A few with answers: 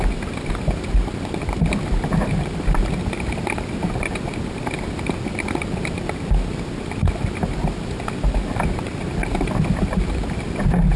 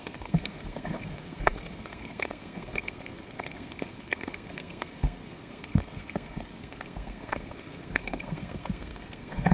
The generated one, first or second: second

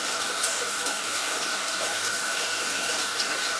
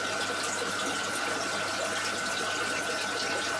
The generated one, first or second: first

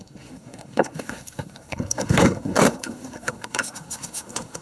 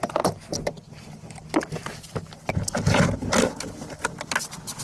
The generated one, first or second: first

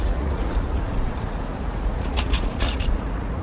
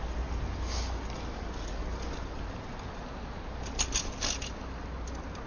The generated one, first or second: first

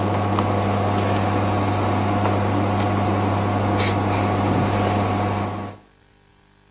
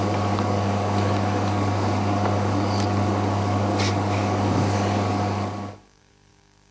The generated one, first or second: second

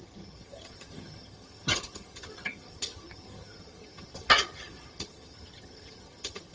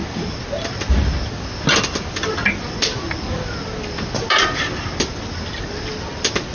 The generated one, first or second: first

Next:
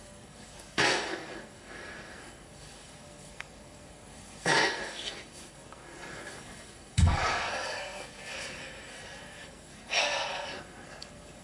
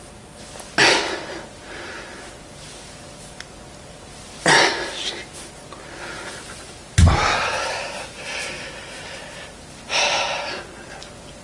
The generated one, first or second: first